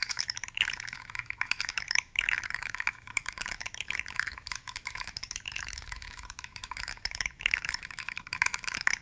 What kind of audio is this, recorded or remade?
remade